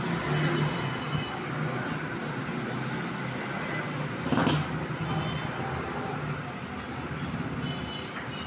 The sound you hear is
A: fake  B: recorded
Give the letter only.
B